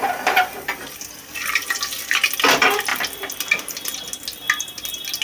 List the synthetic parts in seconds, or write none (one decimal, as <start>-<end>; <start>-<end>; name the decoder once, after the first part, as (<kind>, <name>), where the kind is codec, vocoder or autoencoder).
none